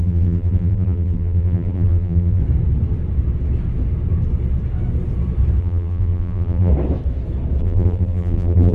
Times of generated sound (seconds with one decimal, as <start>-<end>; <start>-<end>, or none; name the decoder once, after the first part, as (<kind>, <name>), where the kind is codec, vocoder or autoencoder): 0.0-2.4 (vocoder, BigVGAN v2); 5.6-6.7; 7.6-8.7